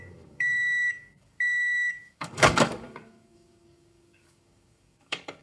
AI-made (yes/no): yes